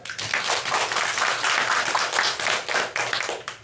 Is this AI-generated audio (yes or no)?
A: no